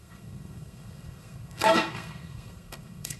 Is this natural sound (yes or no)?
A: no